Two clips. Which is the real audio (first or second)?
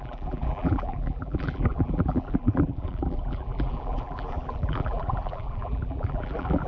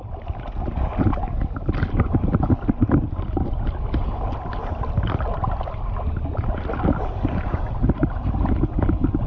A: second